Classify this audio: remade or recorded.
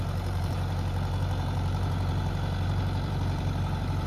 remade